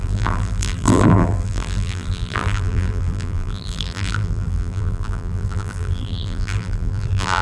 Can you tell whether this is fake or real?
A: fake